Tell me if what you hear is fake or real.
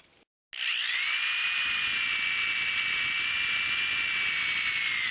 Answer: real